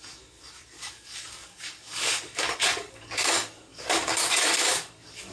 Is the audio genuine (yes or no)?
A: no